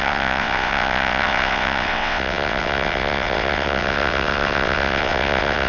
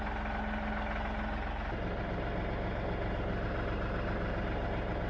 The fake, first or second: first